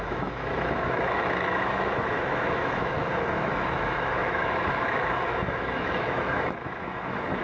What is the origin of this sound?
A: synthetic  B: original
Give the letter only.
A